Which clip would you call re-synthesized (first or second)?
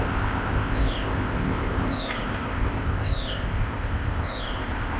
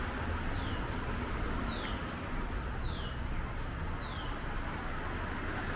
first